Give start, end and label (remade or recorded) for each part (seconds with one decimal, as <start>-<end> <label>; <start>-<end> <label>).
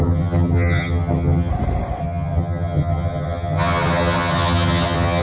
0.0-1.5 remade; 1.5-2.0 recorded; 2.0-5.2 remade